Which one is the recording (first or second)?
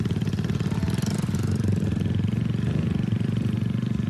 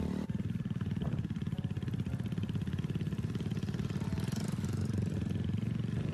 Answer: first